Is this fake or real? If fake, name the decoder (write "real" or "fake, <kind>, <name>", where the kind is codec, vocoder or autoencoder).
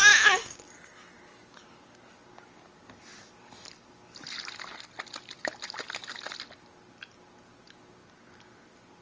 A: real